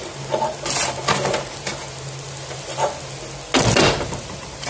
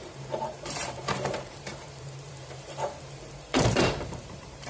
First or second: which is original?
first